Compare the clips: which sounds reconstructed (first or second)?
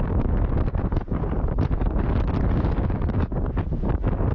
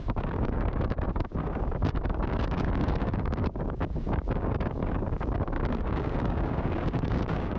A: second